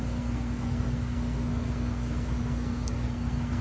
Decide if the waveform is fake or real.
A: fake